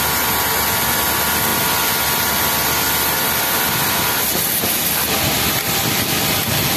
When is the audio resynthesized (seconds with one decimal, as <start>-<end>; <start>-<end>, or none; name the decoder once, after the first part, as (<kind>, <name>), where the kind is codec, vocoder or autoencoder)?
none